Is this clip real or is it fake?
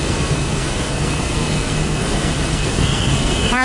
fake